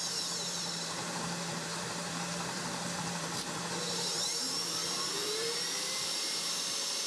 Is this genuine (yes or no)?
no